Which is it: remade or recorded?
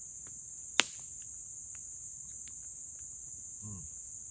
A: recorded